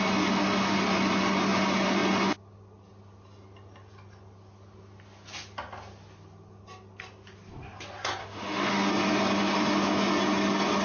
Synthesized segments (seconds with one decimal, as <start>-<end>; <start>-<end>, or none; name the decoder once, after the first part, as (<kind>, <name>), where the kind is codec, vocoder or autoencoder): 8.2-8.9 (autoencoder, DAC-VAE)